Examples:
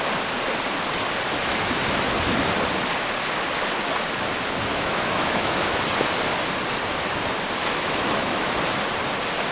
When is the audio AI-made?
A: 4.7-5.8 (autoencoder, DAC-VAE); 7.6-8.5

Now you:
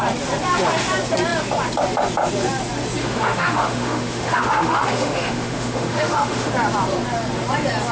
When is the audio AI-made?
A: 3.0-6.5 (autoencoder, DAC-VAE)

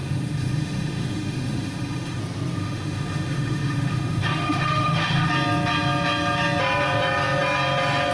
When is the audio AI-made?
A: 0.0-2.2 (autoencoder, DAC-VAE); 2.6-5.3